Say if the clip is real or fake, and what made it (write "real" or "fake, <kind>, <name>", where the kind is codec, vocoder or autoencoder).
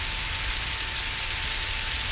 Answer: real